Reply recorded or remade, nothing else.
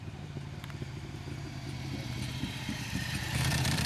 remade